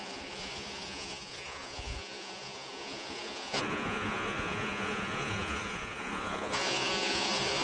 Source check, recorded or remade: remade